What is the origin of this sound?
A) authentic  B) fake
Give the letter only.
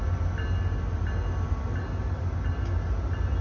A